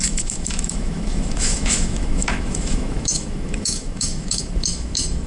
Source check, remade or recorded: remade